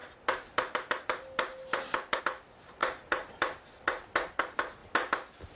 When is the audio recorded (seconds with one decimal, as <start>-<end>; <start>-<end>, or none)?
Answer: 2.8-4.3